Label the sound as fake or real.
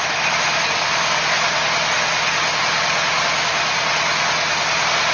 real